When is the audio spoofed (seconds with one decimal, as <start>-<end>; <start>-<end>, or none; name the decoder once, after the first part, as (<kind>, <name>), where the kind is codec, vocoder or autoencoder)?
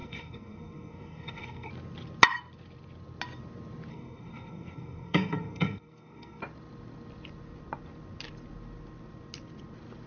0.0-1.7 (codec, SNAC); 3.9-6.4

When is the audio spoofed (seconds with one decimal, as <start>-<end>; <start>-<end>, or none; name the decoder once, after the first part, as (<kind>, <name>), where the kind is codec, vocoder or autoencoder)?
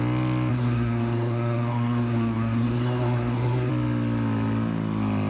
0.5-3.7 (codec, SNAC)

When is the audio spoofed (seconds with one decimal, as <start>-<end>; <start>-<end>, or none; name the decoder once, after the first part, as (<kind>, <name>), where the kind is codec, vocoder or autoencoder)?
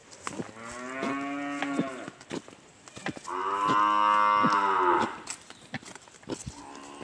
none